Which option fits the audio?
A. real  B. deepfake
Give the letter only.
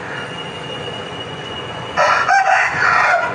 B